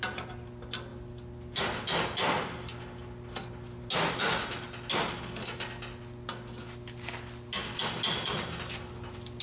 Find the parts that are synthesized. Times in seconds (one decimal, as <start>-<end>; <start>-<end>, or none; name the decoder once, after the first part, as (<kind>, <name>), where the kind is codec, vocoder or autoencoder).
none